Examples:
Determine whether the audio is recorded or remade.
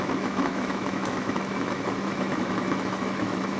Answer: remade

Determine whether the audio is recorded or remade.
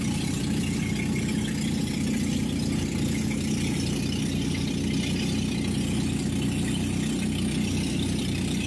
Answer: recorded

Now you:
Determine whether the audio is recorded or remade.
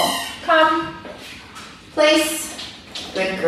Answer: recorded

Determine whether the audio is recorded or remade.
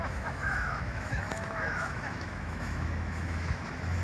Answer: remade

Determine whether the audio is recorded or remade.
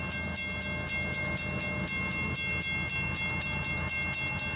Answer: recorded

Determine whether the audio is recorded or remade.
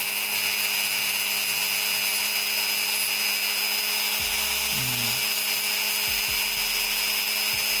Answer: recorded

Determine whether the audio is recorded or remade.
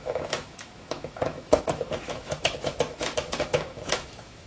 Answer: remade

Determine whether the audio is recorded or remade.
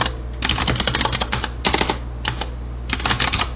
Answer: recorded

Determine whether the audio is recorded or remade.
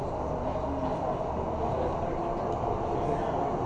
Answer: recorded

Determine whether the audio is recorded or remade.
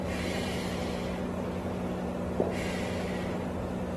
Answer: recorded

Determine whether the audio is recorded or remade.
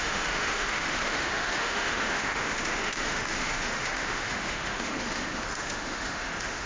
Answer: remade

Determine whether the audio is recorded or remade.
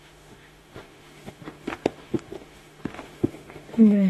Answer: remade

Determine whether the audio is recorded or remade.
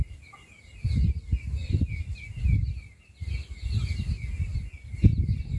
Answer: recorded